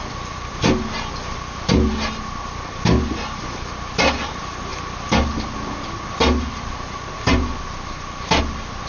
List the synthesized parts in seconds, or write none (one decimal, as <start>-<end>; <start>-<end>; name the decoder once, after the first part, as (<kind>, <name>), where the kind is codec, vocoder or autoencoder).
none